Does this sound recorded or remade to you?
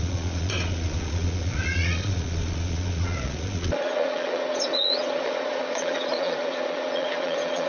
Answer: remade